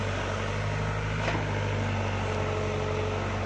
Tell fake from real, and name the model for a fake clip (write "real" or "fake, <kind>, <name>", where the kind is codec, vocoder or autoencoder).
real